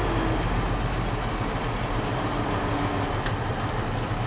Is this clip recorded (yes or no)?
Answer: yes